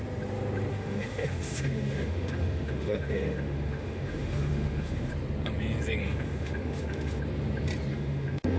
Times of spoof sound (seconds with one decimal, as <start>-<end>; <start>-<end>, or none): 0.7-5.1; 6.0-7.2; 7.9-8.6